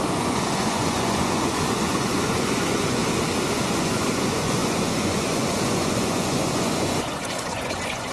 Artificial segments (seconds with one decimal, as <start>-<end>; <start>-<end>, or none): 0.0-3.0; 3.5-8.1